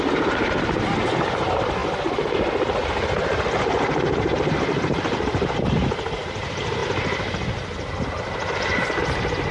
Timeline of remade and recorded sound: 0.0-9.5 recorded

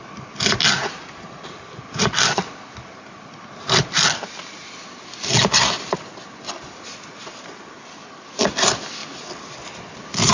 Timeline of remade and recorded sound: 0.0-10.3 recorded

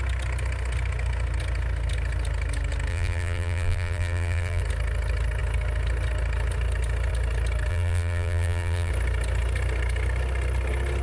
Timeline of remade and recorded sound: 0.0-2.9 recorded; 2.9-4.6 remade; 4.6-7.7 recorded; 7.7-8.9 remade; 8.9-11.0 recorded

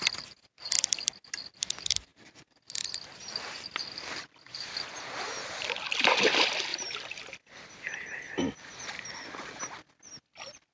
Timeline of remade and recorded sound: 0.0-6.7 recorded; 6.7-7.2 remade; 7.2-10.7 recorded

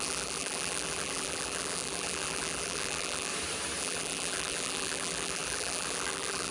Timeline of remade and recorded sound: 0.0-3.3 remade; 3.3-3.8 recorded; 3.8-6.5 remade

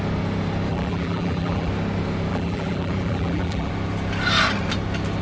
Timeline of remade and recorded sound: 0.0-0.7 recorded; 0.7-1.7 remade; 1.7-2.3 recorded; 2.3-3.7 remade; 3.7-5.2 recorded

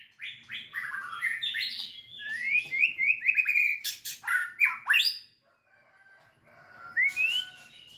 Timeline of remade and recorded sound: 0.0-0.7 recorded; 0.7-2.8 remade; 2.8-8.0 recorded